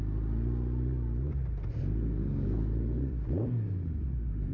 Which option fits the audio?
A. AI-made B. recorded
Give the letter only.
B